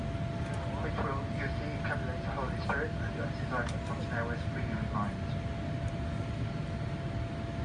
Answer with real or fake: real